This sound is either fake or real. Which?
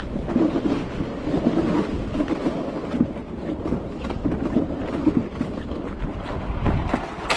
real